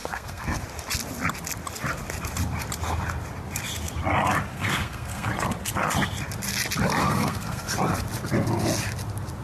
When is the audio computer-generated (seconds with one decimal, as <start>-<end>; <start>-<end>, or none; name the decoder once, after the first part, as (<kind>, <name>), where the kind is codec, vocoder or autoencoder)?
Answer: 0.0-0.6 (codec, SNAC); 4.5-5.3; 7.0-7.7